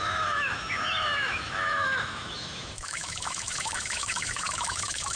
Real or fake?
fake